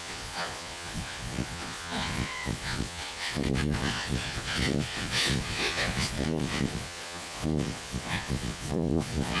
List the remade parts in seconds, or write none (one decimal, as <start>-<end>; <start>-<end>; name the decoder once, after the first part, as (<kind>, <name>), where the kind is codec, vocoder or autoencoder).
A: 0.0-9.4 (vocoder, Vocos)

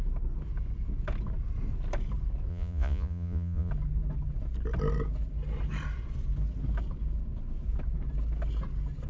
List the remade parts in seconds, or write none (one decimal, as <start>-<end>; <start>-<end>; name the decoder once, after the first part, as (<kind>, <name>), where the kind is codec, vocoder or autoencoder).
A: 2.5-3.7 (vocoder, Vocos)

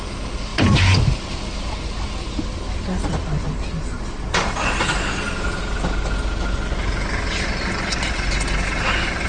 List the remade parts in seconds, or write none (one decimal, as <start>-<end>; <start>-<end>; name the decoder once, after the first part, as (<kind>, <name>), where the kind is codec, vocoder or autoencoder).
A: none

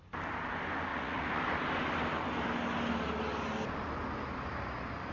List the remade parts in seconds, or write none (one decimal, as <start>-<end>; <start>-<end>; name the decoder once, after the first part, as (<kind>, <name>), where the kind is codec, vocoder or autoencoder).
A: 0.9-1.4 (vocoder, Vocos)

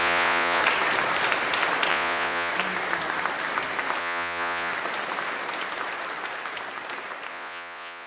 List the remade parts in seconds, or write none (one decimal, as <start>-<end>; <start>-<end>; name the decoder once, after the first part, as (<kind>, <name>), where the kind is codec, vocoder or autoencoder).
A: 0.0-0.6 (vocoder, Vocos); 1.9-2.5; 4.0-4.7; 7.3-8.1